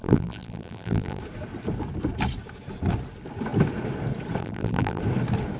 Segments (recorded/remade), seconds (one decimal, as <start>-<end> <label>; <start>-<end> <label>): 0.0-1.2 remade; 1.2-4.4 recorded; 4.4-5.0 remade; 5.0-5.6 recorded